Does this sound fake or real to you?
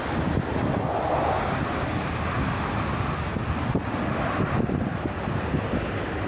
real